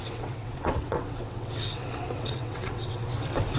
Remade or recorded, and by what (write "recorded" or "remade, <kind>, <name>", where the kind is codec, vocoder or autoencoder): remade, vocoder, WaveNeXt